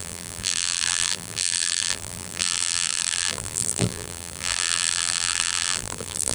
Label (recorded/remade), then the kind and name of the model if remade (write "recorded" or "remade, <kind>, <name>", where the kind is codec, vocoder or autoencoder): remade, vocoder, BigVGAN v2